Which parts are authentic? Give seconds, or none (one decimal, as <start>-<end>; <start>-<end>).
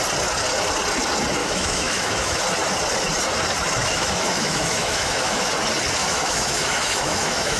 0.0-1.4; 2.4-3.8; 5.5-6.0